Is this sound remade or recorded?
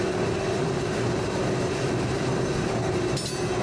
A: recorded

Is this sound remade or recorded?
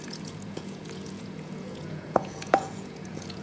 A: remade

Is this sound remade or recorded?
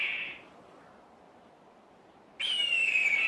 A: recorded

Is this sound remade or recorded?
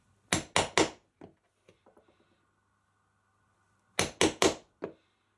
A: recorded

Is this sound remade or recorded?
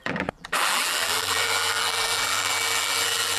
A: remade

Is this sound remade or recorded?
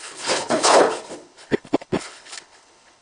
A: remade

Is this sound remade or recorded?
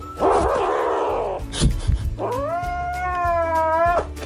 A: recorded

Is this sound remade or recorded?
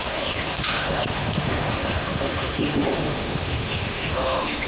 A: remade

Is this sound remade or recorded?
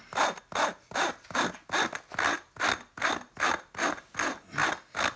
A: recorded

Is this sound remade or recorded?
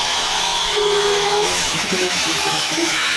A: remade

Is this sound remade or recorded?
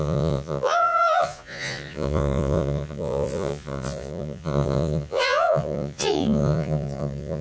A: remade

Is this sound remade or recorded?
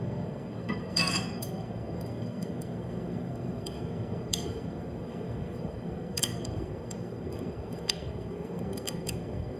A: remade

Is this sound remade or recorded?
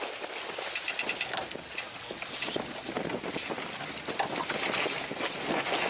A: recorded